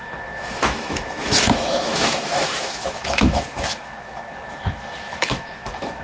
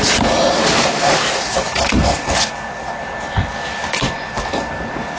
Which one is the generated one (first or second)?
first